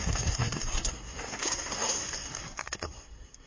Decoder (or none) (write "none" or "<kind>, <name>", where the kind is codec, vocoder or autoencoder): codec, SNAC